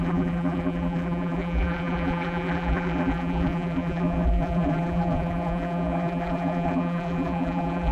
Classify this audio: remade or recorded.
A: remade